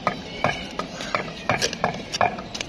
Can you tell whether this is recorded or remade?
remade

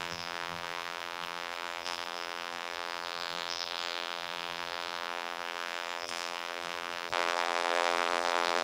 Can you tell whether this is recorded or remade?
remade